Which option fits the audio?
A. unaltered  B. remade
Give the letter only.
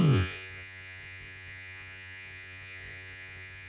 B